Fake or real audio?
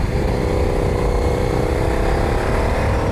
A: real